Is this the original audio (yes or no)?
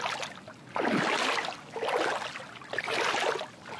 yes